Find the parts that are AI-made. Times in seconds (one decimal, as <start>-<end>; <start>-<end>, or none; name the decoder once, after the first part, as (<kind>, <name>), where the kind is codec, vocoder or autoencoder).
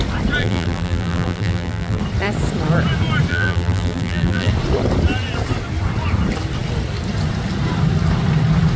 0.4-2.0 (vocoder, BigVGAN v2); 3.3-4.5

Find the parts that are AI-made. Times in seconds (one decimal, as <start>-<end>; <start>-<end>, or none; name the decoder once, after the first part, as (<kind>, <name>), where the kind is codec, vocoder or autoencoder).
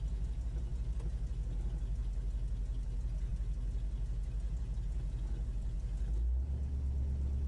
none